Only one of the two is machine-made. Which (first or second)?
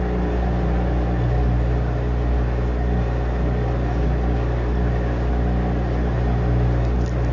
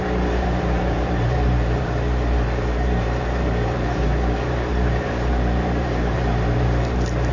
second